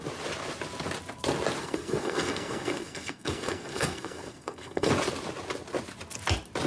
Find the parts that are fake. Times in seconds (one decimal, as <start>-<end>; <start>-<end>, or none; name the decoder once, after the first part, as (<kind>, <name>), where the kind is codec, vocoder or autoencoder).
1.6-4.9 (codec, SNAC)